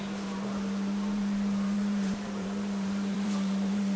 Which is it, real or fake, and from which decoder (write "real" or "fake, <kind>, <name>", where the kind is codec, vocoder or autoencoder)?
fake, vocoder, BigVGAN v2